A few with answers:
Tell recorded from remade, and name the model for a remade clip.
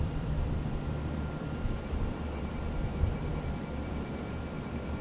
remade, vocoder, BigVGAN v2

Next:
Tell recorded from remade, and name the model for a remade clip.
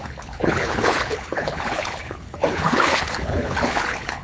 remade, codec, HILCodec